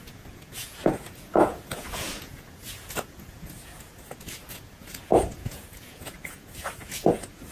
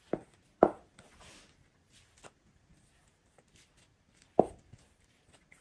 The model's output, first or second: first